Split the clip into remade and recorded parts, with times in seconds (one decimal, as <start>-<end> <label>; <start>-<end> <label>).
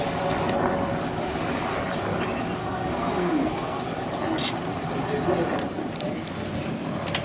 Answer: 0.0-2.6 recorded; 2.6-3.8 remade; 3.8-7.2 recorded